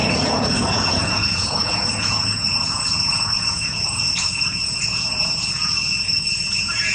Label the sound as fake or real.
fake